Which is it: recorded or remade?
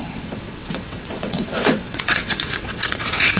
remade